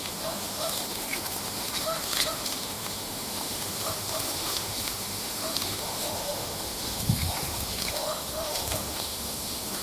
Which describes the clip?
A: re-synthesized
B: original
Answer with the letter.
A